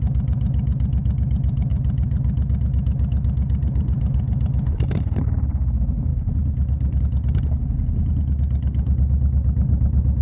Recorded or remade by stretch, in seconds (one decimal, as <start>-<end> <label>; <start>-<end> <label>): 0.0-10.2 recorded